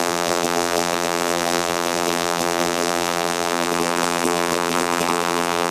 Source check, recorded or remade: remade